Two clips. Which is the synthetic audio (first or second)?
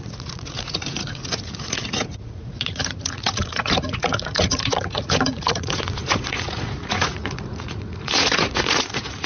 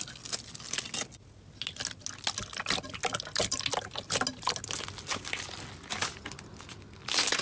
first